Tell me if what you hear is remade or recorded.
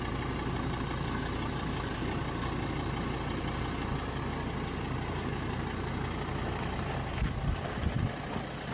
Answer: recorded